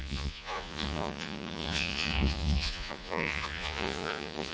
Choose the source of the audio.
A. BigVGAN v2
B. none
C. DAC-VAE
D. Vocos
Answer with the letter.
D